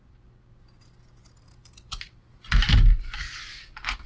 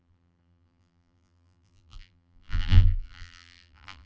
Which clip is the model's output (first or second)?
second